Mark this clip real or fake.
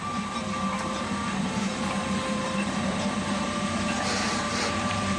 fake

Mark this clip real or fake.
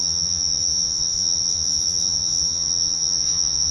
fake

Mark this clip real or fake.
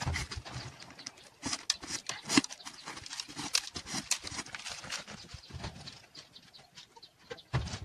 real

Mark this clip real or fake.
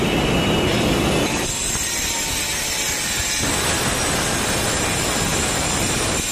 real